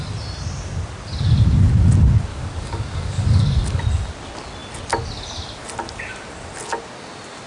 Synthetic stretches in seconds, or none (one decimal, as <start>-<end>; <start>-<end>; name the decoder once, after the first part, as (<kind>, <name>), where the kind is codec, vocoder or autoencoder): 2.3-3.8 (codec, DAC)